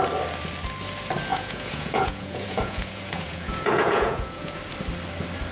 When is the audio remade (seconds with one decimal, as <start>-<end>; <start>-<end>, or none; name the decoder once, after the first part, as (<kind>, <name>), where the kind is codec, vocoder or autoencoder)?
1.3-4.6 (vocoder, Vocos)